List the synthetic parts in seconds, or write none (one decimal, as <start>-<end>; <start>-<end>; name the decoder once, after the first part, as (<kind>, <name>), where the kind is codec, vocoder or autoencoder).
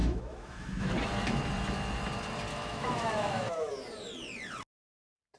0.0-0.9 (autoencoder, DAC-VAE); 2.5-3.7